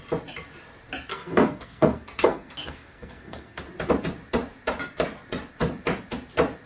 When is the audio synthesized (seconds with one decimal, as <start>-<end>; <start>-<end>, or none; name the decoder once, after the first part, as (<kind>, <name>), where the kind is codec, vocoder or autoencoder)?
1.1-3.6 (codec, SNAC)